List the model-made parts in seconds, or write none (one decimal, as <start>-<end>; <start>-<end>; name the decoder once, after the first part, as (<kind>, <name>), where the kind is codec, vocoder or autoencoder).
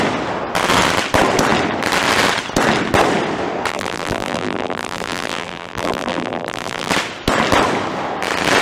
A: 3.7-6.9 (vocoder, BigVGAN v2)